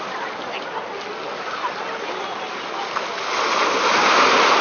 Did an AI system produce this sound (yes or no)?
no